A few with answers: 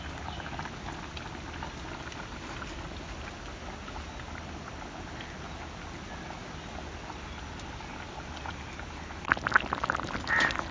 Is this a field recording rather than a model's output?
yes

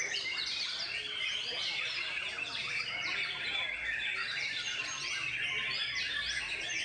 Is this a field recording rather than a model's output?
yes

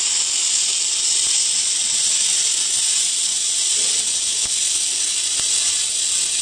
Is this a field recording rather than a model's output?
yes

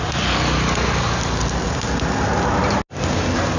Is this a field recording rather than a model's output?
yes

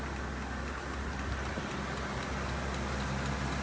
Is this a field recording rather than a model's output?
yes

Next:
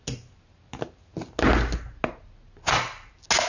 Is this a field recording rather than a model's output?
yes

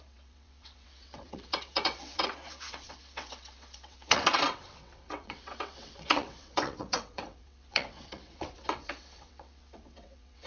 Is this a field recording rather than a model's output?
no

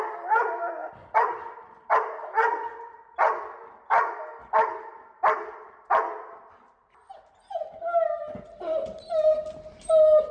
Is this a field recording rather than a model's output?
yes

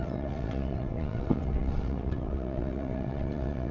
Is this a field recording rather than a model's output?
no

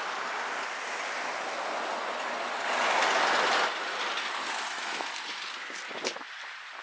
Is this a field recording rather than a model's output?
yes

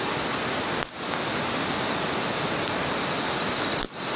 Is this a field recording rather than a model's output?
yes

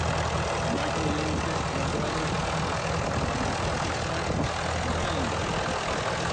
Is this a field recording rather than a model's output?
yes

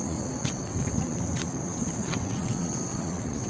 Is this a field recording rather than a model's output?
no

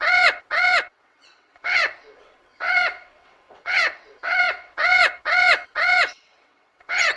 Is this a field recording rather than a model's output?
no